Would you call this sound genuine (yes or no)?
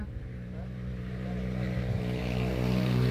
no